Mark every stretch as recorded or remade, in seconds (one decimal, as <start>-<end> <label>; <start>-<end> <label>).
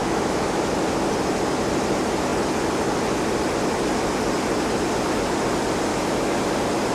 0.0-0.6 remade; 0.6-5.9 recorded; 5.9-6.4 remade; 6.4-6.9 recorded